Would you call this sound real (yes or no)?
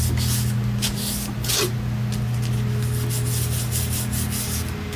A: yes